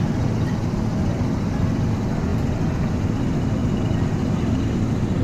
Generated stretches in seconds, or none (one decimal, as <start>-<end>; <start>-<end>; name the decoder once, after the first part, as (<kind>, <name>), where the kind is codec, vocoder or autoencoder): none